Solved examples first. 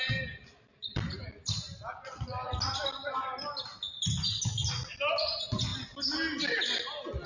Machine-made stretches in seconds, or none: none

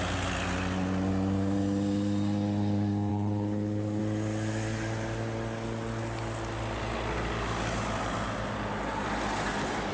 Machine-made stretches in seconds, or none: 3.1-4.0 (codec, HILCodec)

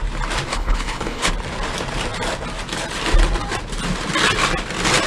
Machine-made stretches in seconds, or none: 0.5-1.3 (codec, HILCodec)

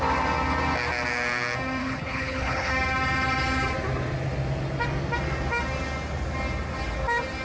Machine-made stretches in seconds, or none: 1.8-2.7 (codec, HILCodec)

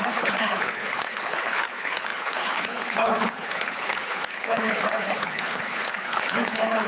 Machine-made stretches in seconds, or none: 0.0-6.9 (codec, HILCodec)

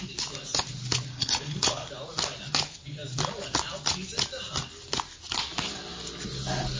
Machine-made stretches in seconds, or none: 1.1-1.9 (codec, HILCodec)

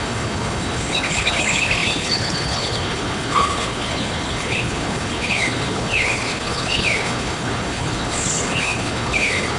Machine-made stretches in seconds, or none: 0.0-9.6 (codec, HILCodec)

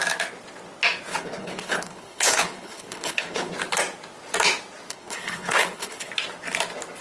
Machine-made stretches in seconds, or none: 1.1-3.5 (codec, HILCodec); 4.9-6.1